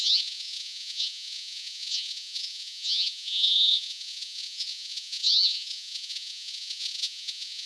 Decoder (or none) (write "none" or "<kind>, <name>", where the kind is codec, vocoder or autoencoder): vocoder, Vocos